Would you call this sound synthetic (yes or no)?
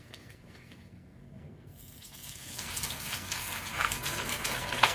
yes